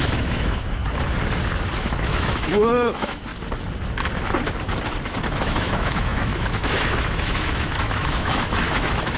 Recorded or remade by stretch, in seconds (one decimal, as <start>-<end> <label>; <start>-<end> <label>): 0.0-0.8 remade; 0.8-1.8 recorded; 1.8-3.3 remade; 3.3-5.4 recorded; 5.4-9.2 remade